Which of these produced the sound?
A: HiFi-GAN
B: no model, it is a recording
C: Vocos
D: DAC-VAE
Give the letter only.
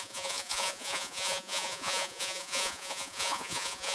C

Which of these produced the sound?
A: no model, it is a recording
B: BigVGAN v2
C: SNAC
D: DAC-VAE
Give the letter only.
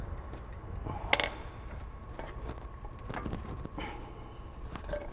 A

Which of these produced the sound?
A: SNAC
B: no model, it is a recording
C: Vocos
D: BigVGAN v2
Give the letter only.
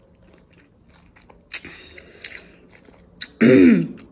B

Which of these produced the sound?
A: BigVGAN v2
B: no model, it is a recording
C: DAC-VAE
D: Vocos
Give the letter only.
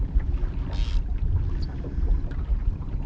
B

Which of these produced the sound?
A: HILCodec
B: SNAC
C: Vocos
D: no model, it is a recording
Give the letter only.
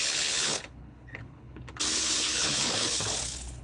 A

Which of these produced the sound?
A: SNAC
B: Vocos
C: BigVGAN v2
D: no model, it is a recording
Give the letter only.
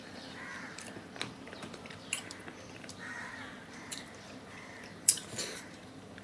C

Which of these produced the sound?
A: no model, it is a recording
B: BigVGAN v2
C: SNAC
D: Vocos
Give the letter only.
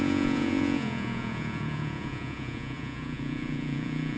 D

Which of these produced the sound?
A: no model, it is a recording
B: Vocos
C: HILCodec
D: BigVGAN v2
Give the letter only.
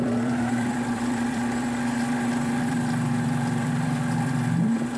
D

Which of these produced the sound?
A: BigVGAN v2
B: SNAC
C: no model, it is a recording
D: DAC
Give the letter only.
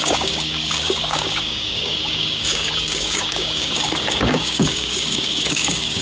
D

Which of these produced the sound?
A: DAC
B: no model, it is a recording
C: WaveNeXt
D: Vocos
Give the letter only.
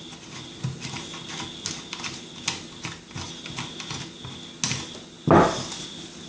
B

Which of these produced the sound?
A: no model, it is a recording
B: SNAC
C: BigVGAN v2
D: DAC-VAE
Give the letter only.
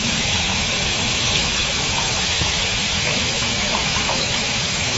D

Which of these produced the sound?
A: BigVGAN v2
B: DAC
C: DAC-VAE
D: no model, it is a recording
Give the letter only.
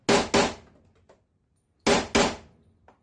D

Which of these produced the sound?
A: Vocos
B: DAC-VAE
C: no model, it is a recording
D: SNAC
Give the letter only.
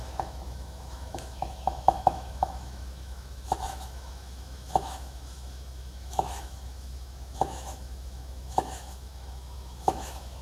B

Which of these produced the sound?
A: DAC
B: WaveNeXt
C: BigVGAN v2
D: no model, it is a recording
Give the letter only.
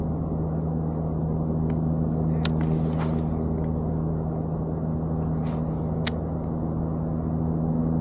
D